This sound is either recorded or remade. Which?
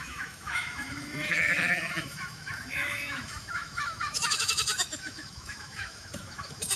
remade